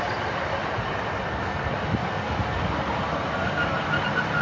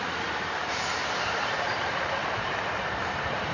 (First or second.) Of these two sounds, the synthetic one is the second